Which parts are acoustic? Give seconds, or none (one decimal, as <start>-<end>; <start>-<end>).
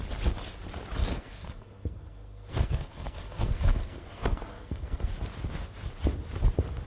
0.0-1.0; 5.1-6.9